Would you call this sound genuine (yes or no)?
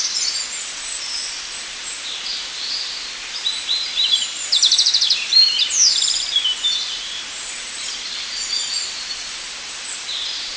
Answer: no